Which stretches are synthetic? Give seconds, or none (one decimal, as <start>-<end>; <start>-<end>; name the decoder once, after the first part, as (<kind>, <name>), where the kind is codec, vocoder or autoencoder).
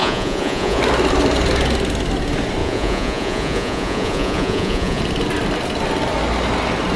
0.0-0.8 (vocoder, Vocos); 2.6-5.0